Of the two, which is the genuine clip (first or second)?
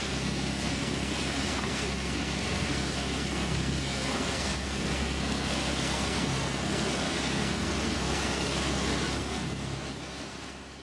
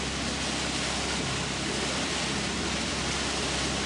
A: second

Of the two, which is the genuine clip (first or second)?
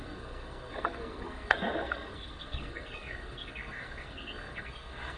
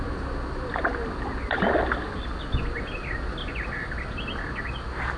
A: second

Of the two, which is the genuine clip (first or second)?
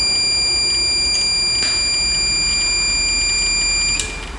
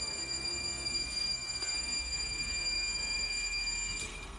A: first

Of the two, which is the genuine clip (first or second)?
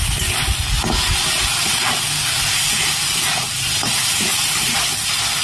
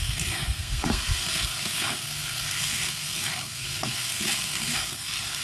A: first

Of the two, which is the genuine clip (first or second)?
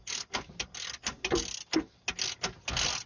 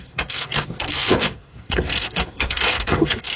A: first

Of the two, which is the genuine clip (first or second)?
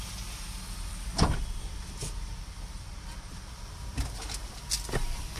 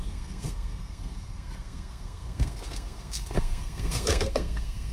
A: first